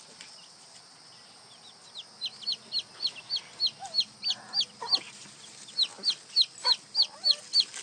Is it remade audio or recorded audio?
recorded